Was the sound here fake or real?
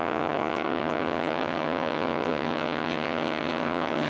fake